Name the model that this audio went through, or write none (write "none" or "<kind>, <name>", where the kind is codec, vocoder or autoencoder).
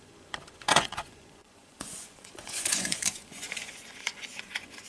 vocoder, Vocos